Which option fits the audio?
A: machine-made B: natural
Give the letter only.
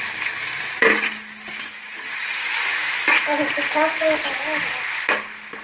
B